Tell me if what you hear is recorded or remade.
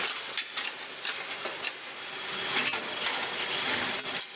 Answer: recorded